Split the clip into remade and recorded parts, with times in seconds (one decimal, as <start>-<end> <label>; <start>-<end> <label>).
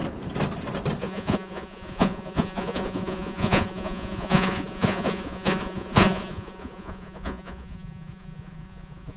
0.0-1.0 recorded; 1.0-9.2 remade